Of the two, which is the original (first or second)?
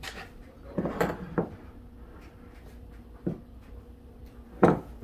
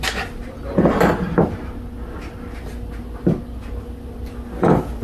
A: second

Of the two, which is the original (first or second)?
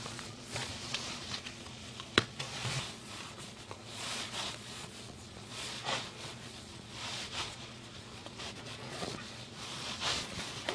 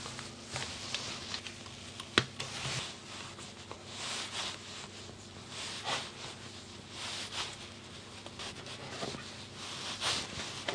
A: second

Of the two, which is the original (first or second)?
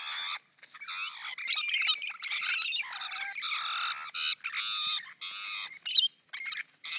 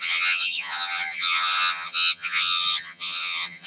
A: first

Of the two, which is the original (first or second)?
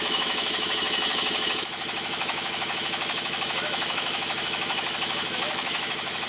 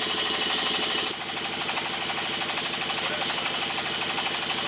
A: second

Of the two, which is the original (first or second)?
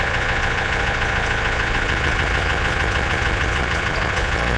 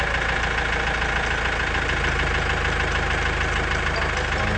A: second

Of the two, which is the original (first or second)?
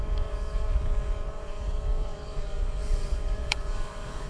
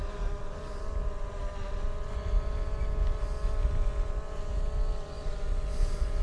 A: second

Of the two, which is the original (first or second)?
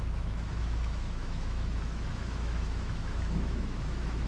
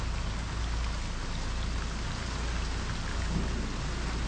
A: second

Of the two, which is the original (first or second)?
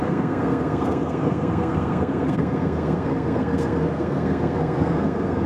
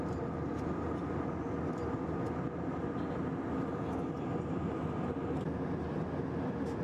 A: second